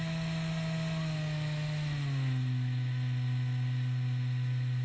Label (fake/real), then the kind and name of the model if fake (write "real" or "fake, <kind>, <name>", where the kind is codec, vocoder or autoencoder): real